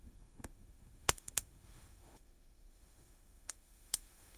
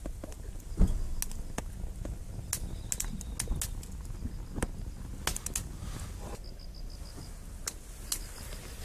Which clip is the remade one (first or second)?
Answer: first